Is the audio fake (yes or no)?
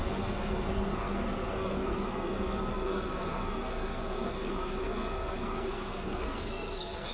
yes